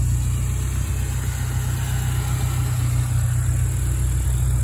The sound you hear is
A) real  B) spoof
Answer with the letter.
A